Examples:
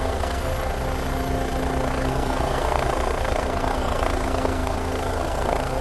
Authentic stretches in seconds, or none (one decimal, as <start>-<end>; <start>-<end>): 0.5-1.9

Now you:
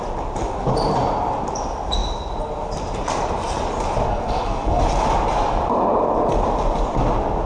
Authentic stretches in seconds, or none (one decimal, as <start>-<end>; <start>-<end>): 0.0-4.1; 4.8-7.5

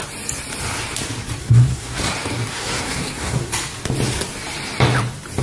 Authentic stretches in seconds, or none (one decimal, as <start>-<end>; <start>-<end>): 0.0-1.4; 2.0-2.5; 3.5-5.4

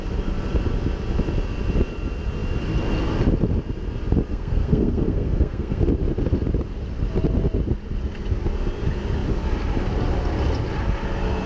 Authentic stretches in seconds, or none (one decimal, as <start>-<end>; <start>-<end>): 0.0-4.3; 5.8-11.5

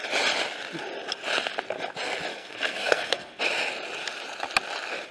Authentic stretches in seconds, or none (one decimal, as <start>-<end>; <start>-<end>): 0.0-2.3; 3.4-5.1